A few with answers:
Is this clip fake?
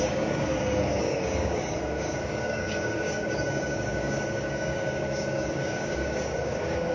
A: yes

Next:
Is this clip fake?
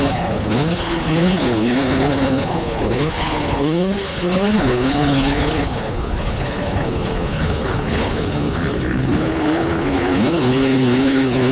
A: yes